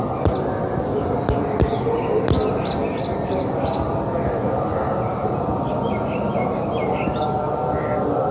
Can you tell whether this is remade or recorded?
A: recorded